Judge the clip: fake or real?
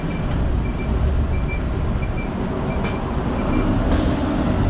real